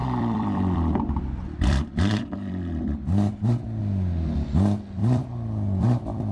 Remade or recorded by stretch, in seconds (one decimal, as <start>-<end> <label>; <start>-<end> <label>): 0.0-3.8 remade; 3.8-5.0 recorded; 5.0-6.3 remade